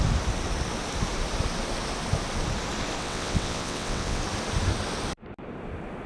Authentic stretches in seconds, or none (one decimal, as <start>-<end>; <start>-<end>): 0.0-3.0; 4.2-6.1